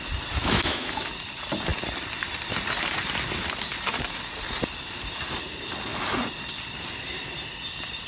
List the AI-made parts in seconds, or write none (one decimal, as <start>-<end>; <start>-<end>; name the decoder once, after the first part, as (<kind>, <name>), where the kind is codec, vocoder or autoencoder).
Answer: 0.4-1.1 (autoencoder, DAC-VAE)